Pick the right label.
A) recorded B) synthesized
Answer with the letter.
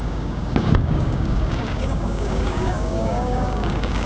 B